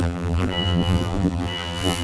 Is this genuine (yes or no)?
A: no